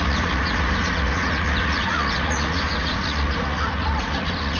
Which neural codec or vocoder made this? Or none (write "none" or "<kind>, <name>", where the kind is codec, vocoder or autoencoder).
vocoder, Vocos